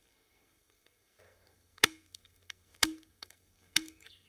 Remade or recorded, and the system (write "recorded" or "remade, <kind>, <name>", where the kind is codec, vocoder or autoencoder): remade, codec, SNAC